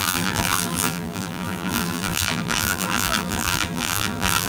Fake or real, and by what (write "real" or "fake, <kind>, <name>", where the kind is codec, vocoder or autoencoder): fake, vocoder, BigVGAN v2